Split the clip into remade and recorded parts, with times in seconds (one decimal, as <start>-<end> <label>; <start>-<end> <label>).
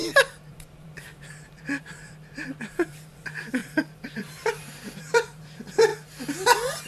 0.0-0.5 recorded; 0.5-5.9 remade; 5.9-6.9 recorded